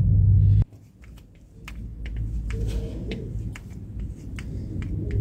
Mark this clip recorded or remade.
recorded